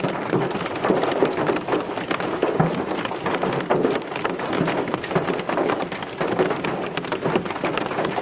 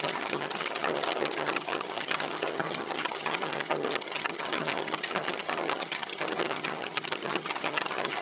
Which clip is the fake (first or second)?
second